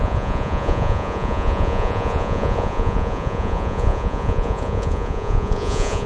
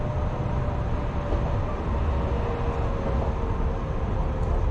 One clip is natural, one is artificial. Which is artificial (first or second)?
first